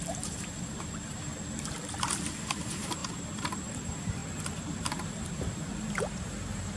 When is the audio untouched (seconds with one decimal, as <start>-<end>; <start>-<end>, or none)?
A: 1.3-2.6; 4.2-4.8